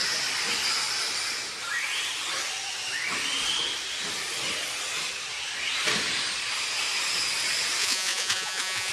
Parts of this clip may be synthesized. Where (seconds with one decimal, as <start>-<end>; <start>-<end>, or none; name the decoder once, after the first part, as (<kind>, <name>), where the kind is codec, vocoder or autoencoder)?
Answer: 7.8-8.9 (vocoder, Vocos)